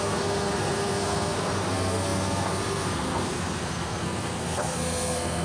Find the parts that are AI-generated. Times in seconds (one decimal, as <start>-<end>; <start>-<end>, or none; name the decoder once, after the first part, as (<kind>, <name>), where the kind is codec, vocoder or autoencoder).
0.0-5.4 (codec, SNAC)